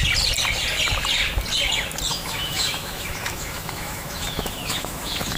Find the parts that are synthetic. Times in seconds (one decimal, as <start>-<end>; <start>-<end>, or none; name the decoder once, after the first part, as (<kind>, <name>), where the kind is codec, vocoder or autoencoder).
2.1-5.4 (autoencoder, DAC-VAE)